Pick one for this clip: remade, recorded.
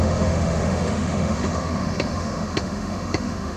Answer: remade